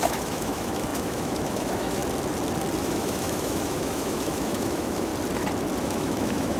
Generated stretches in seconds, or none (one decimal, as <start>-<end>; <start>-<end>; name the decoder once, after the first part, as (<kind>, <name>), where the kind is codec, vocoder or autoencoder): 0.0-2.0 (autoencoder, DAC-VAE); 2.8-5.1; 5.8-6.6